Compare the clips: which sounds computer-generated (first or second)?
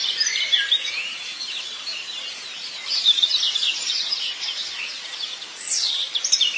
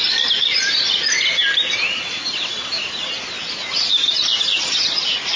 first